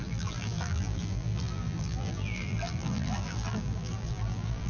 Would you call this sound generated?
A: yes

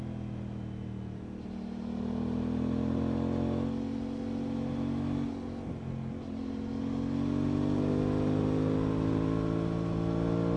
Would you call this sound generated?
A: no